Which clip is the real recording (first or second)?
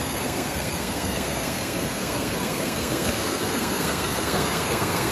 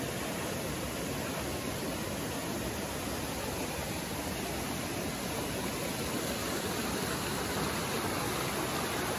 second